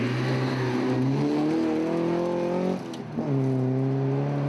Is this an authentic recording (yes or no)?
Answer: yes